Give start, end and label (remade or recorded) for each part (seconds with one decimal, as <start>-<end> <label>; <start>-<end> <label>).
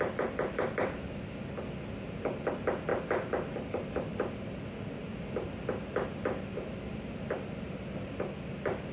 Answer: 0.0-8.9 recorded